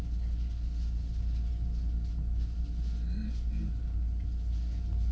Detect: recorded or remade recorded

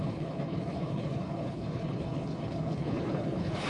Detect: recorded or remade remade